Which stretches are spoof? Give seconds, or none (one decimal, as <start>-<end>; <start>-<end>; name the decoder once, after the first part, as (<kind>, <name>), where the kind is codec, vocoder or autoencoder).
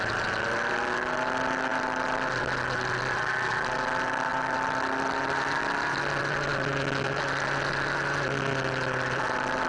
none